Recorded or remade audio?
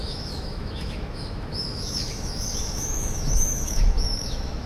remade